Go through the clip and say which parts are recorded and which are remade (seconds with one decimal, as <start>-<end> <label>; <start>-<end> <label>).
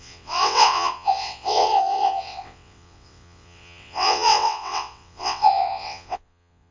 0.0-6.7 remade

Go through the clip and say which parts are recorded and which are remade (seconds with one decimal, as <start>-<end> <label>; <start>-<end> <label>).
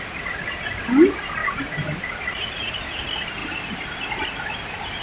0.0-1.4 recorded; 1.4-2.7 remade; 2.7-5.0 recorded